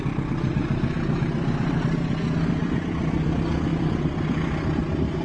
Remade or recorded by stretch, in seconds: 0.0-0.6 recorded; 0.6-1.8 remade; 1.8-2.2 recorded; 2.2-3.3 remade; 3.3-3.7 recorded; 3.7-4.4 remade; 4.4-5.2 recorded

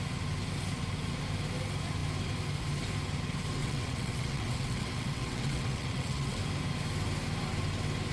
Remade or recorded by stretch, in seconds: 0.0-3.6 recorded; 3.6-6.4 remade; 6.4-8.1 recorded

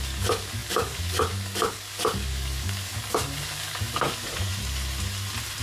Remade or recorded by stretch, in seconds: 0.0-4.5 remade; 4.5-5.6 recorded

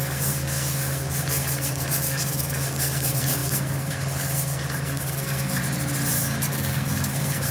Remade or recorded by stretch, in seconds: 0.0-5.6 remade; 5.6-6.5 recorded; 6.5-7.5 remade

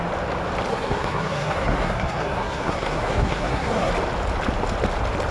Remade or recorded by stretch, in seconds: 0.0-0.7 recorded; 0.7-3.9 remade; 3.9-5.3 recorded